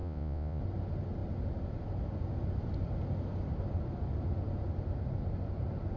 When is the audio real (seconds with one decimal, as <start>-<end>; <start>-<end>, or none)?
0.6-6.0